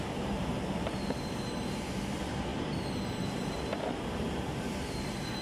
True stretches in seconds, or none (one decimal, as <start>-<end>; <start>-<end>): none